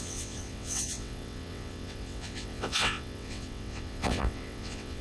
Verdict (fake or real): fake